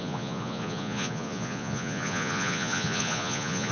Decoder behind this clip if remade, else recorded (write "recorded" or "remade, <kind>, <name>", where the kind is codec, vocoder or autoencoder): remade, vocoder, Vocos